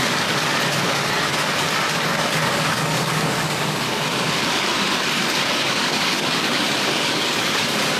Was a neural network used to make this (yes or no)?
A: yes